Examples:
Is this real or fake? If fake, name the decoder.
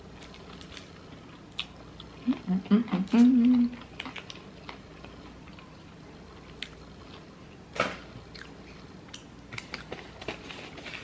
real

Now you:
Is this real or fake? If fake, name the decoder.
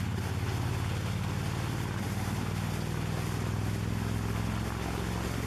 real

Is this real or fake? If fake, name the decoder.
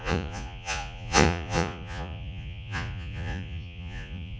fake, vocoder, Vocos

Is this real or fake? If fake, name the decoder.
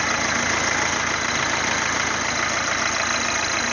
real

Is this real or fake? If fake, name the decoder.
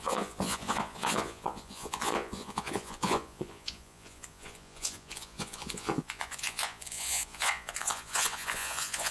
fake, vocoder, Vocos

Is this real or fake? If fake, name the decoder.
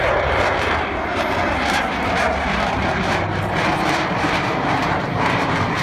fake, vocoder, BigVGAN v2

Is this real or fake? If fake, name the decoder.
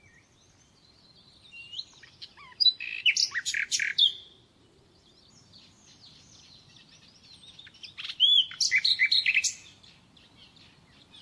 fake, vocoder, BigVGAN v2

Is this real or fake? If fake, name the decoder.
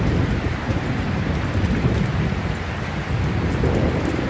real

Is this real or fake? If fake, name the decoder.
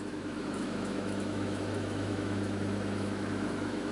fake, autoencoder, DAC-VAE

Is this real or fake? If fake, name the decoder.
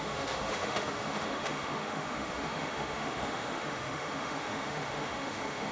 fake, autoencoder, DAC-VAE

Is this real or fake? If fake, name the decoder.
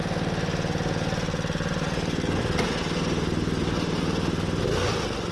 real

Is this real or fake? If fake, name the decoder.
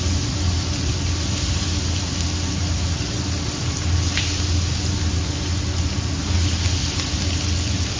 real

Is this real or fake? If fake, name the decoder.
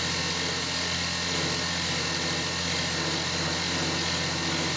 real